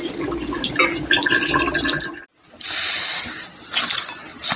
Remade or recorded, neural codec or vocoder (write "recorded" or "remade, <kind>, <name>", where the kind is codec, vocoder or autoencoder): recorded